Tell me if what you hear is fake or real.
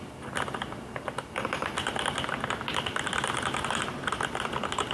real